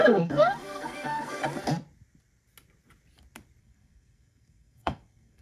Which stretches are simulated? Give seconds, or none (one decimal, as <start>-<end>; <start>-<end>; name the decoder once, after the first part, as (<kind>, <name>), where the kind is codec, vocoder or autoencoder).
0.0-1.4 (codec, SNAC); 3.6-5.4